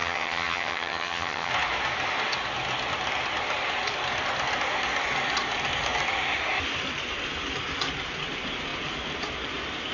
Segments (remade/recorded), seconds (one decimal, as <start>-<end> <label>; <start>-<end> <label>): 0.0-1.5 remade; 1.5-9.9 recorded